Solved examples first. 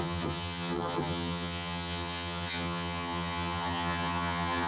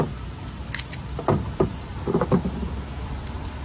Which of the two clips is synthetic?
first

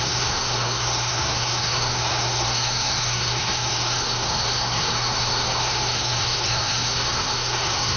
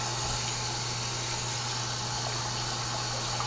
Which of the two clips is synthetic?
first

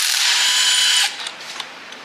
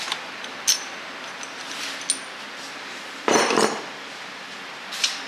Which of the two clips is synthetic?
first